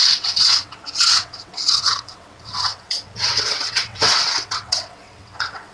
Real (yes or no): no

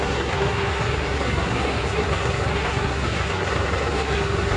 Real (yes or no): no